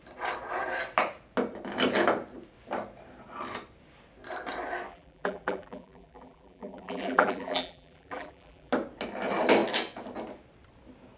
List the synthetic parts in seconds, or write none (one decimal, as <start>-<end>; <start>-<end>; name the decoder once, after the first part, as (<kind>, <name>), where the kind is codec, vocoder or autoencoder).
4.9-8.7 (vocoder, BigVGAN v2)